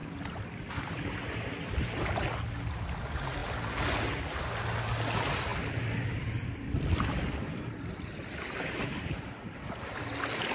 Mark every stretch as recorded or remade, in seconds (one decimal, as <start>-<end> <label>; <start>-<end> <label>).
0.0-0.7 remade; 0.7-5.5 recorded; 5.5-9.9 remade; 9.9-10.5 recorded